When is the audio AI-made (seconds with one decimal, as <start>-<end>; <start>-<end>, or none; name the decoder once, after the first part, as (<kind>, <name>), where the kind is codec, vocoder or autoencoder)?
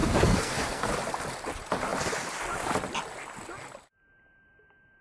0.0-0.9 (codec, SNAC)